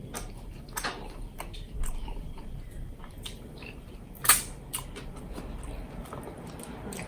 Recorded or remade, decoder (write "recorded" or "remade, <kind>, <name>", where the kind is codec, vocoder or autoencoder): recorded